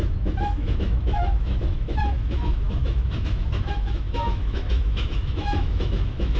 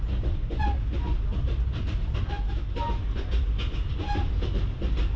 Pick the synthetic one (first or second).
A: first